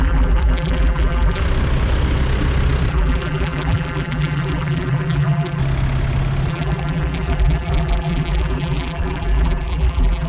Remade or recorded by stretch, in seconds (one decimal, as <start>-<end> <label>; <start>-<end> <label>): 0.0-1.4 remade; 1.4-2.9 recorded; 2.9-5.6 remade; 5.6-6.5 recorded; 6.5-10.3 remade